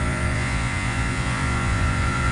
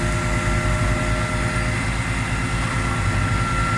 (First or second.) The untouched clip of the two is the second